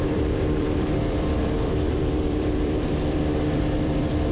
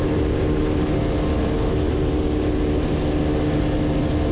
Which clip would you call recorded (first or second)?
second